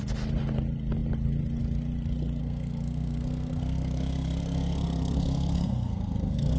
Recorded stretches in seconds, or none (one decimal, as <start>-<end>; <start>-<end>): 0.0-2.4